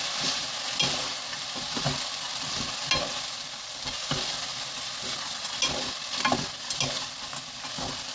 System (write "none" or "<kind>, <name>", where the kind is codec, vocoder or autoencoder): none